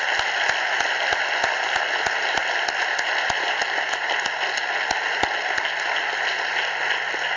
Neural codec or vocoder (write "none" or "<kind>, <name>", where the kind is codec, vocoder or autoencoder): none